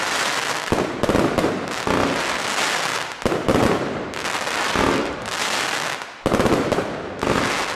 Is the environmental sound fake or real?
real